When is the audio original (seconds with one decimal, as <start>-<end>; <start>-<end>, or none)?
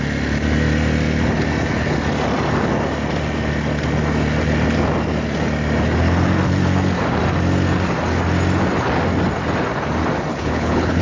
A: 0.0-10.3